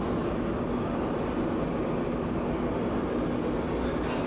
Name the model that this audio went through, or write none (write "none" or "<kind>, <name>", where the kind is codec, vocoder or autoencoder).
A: none